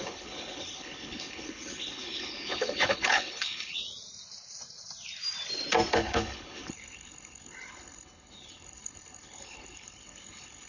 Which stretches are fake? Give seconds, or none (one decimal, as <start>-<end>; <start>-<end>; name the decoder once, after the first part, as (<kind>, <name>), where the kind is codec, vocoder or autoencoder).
0.0-3.8 (codec, HILCodec); 5.9-10.7